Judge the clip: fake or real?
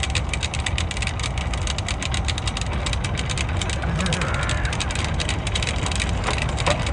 real